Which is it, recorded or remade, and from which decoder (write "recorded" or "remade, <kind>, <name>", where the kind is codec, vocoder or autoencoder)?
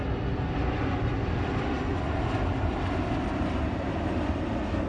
recorded